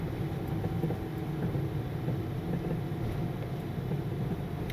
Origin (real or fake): real